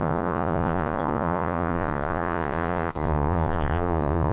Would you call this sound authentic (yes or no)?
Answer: no